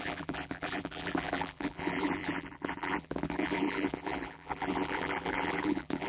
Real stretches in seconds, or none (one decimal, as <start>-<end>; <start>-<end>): none